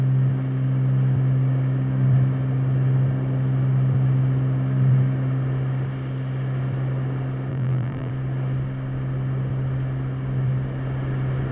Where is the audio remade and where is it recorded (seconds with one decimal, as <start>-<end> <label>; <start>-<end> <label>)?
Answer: 0.0-7.5 recorded; 7.5-8.1 remade; 8.1-11.5 recorded